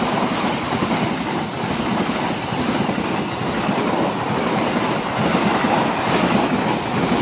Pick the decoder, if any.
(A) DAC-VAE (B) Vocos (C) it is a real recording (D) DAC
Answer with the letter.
C